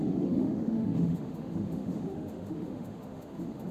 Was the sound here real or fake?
fake